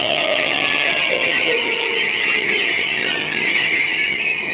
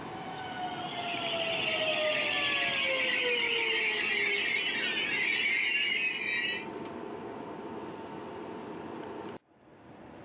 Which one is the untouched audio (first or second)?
second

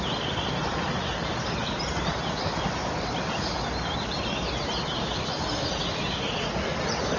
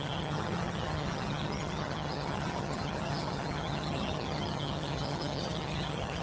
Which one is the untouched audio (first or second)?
first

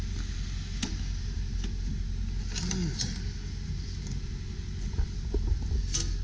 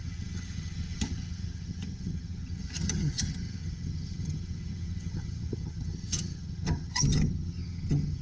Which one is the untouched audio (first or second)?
first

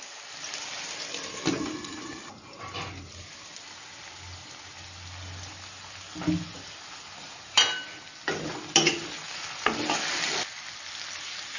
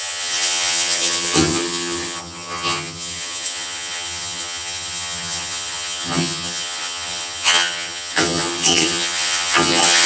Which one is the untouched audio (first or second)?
first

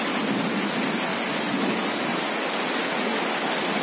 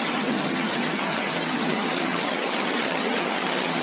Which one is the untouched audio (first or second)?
first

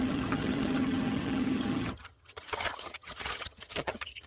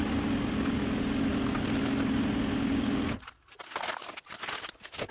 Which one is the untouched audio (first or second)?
second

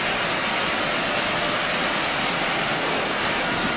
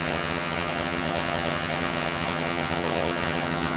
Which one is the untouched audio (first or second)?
first